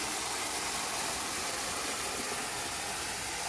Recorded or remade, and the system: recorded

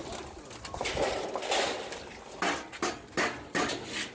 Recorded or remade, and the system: recorded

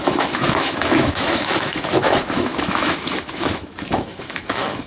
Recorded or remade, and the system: remade, autoencoder, DAC-VAE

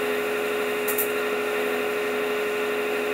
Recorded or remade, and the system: remade, autoencoder, DAC-VAE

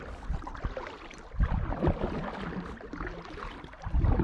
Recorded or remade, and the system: recorded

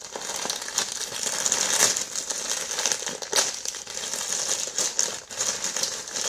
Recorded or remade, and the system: recorded